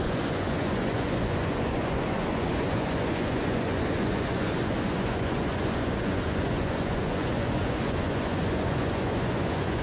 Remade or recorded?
remade